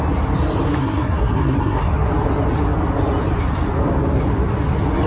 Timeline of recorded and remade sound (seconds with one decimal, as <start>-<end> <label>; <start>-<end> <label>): 0.0-0.8 recorded; 0.8-2.1 remade; 2.1-5.1 recorded